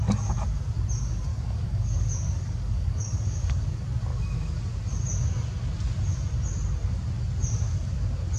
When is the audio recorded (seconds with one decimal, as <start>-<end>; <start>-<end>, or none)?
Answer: 0.0-1.3; 3.6-4.1; 4.6-8.4